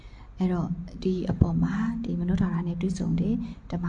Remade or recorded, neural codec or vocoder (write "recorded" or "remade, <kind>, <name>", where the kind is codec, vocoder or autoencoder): recorded